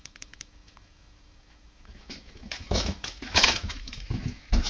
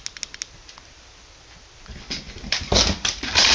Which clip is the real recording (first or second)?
second